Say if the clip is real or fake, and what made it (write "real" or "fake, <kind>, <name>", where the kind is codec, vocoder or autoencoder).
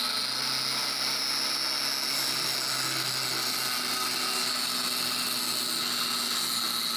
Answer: real